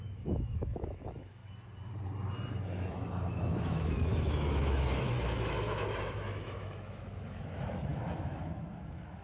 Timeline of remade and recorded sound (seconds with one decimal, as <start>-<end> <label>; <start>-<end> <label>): 0.0-1.4 remade; 1.4-2.5 recorded; 2.5-9.2 remade